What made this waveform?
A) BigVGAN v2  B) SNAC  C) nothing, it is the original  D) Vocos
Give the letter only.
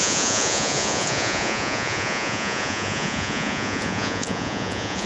D